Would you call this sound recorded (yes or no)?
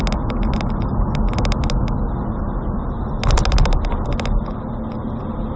yes